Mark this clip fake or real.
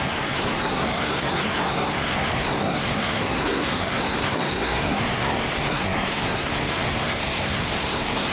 fake